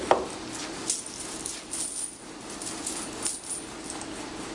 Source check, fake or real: real